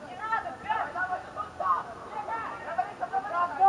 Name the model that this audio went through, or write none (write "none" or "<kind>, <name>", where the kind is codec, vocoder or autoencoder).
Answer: none